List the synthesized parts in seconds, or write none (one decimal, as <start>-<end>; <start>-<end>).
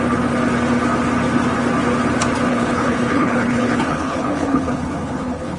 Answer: 2.5-5.6